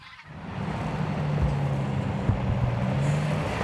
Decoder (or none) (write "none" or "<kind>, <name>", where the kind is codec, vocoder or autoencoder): none